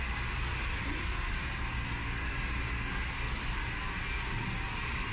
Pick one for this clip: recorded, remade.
recorded